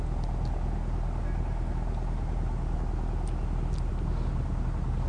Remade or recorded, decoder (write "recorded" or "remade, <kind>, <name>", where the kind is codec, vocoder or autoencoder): recorded